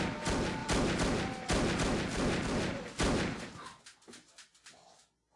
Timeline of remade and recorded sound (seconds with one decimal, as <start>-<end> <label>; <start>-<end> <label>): 0.0-0.6 recorded; 0.6-3.8 remade; 3.8-5.4 recorded